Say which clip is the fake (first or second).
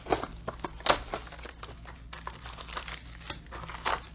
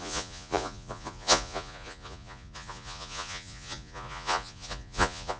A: second